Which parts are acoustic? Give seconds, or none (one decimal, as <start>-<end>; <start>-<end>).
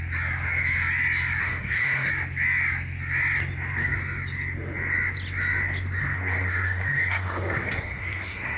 0.0-1.4; 2.1-6.0